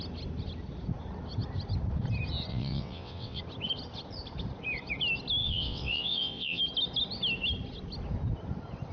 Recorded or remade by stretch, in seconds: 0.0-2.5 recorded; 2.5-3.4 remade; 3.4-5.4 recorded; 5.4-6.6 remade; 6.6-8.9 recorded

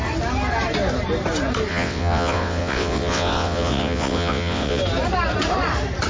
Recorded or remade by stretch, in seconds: 0.0-1.7 recorded; 1.7-4.8 remade; 4.8-6.1 recorded

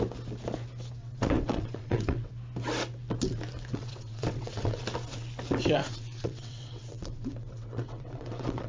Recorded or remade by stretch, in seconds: 0.0-1.0 recorded; 1.0-2.3 remade; 2.3-3.7 recorded; 3.7-4.8 remade; 4.8-5.8 recorded; 5.8-8.7 remade

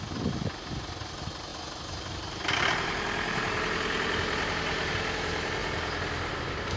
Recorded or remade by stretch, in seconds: 0.0-6.8 recorded

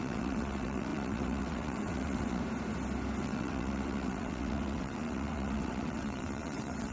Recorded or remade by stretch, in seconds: 0.0-2.4 remade; 2.4-3.2 recorded; 3.2-6.9 remade